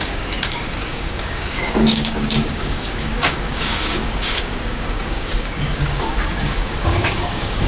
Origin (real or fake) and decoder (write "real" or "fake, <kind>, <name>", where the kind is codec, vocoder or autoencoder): fake, codec, DAC